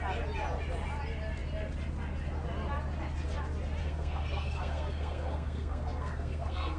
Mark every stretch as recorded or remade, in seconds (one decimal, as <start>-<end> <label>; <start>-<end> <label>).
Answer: 0.0-3.8 recorded; 3.8-6.8 remade